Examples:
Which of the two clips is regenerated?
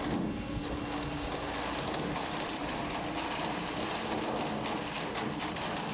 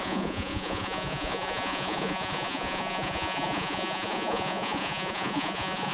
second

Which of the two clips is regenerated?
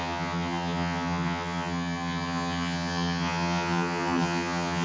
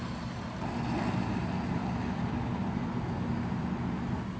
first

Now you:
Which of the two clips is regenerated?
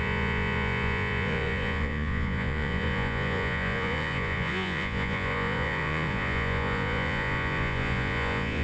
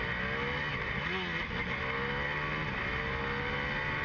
first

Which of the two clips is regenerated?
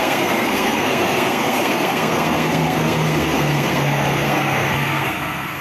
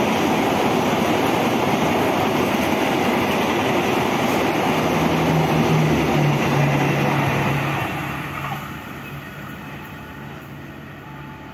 first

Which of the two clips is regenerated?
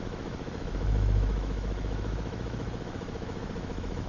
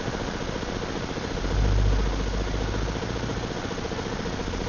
first